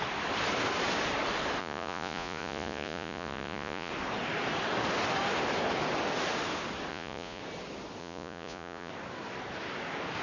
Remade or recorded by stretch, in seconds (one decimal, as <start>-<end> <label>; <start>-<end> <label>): 0.0-1.6 recorded; 1.6-3.9 remade; 3.9-6.9 recorded; 6.9-7.4 remade; 7.4-8.0 recorded; 8.0-8.9 remade; 8.9-10.2 recorded